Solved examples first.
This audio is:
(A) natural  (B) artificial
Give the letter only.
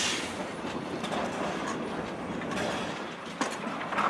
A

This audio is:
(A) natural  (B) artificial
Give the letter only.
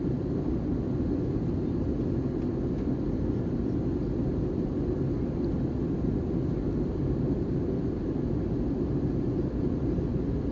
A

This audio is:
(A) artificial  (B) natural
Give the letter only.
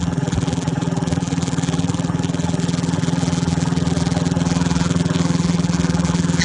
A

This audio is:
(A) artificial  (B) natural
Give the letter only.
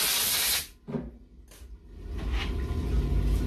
B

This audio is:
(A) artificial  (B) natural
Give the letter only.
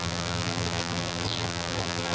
A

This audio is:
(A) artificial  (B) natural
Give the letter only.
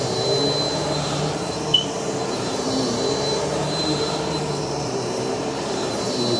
A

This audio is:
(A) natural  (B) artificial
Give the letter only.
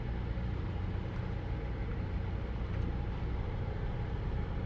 A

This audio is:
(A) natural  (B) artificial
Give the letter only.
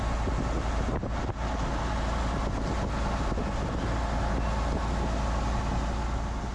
A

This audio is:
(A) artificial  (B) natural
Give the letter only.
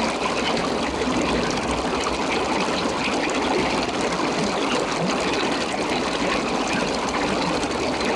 B